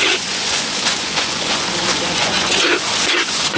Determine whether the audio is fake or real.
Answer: fake